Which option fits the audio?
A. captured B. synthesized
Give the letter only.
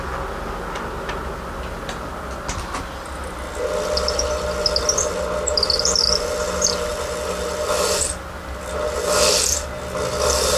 A